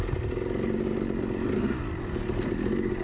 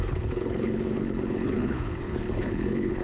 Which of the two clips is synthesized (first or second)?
second